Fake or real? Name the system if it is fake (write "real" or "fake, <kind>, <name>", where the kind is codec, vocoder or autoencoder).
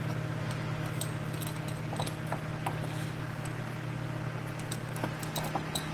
real